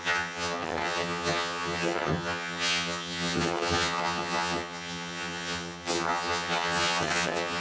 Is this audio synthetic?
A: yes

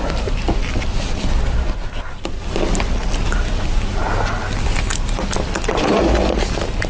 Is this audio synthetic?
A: no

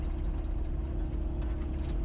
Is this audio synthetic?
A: no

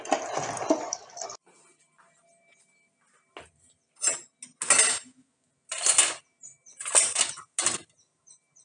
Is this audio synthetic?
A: no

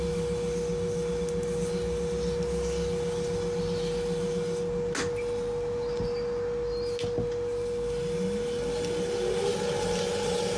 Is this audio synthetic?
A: no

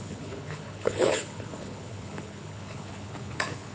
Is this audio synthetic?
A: yes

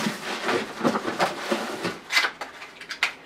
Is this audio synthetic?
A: no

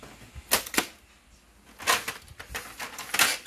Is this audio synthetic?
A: no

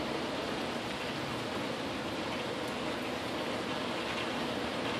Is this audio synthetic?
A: no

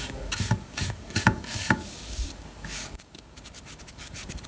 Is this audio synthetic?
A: yes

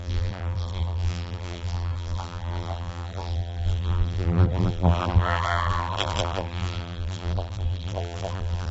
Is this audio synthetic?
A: yes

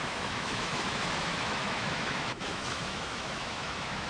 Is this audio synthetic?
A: yes